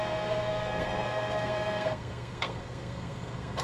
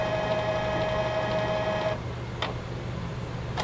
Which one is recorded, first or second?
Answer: second